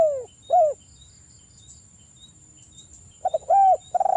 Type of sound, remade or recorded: recorded